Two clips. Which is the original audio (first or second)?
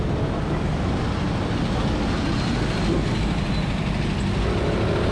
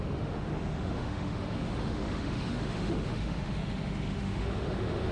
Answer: first